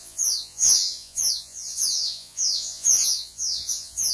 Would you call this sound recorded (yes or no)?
no